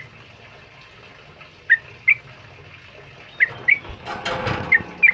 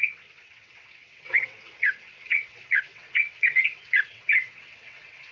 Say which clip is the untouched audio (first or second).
first